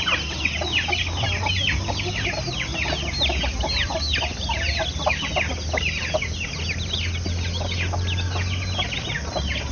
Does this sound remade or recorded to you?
recorded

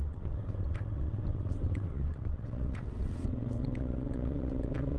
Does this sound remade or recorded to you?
remade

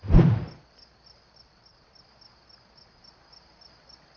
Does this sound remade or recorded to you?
recorded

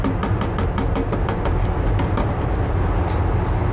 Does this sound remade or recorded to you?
recorded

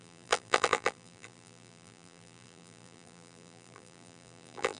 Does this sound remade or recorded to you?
remade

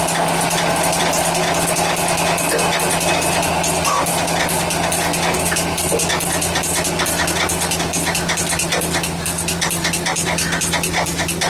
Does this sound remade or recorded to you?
recorded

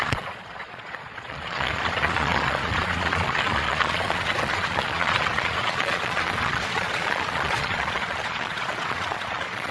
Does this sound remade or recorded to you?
remade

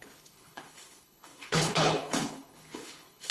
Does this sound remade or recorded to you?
remade